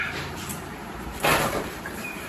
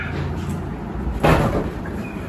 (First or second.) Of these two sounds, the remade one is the first